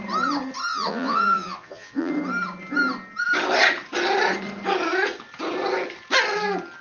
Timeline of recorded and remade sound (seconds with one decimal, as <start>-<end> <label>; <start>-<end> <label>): 0.0-0.7 recorded; 0.7-2.1 remade; 2.1-6.8 recorded